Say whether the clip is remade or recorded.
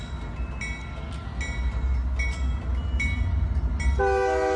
recorded